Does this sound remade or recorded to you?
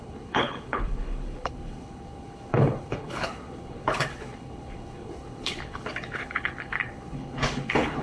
remade